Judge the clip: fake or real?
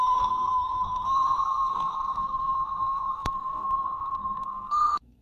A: fake